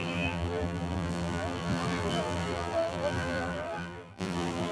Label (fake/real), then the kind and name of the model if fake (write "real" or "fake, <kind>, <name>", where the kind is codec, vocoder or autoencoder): fake, vocoder, BigVGAN v2